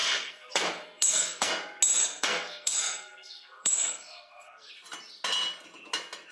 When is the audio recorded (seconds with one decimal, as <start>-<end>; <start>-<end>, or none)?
1.5-2.0; 4.7-6.3